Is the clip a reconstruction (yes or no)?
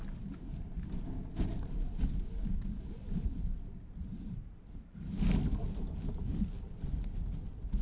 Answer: no